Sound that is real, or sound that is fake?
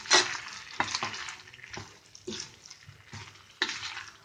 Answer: real